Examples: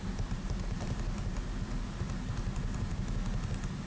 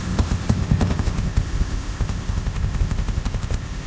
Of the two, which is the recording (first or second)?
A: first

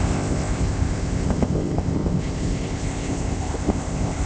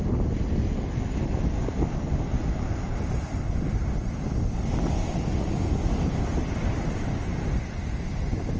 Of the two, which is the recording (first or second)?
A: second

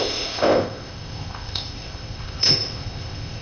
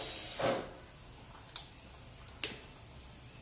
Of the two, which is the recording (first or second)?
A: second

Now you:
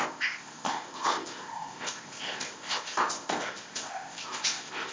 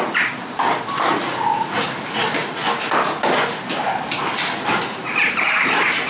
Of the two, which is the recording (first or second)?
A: second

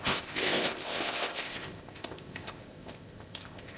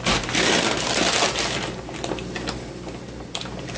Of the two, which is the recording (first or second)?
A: second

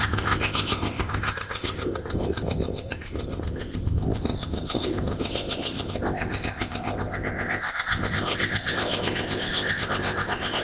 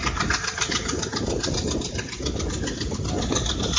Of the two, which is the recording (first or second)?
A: second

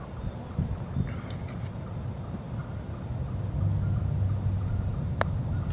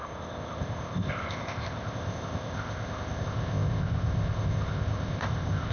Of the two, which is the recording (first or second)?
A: first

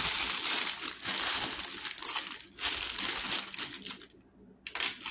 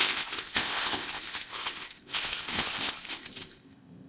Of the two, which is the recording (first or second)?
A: first